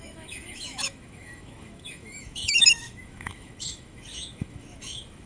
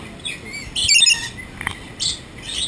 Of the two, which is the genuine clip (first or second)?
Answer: second